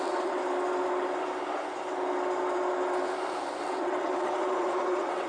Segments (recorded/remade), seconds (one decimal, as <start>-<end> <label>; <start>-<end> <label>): 0.0-0.4 remade; 0.4-3.6 recorded; 3.6-5.3 remade